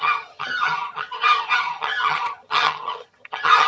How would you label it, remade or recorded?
remade